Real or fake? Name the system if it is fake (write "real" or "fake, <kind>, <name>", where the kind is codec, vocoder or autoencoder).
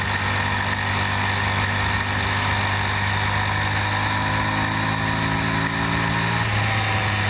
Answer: real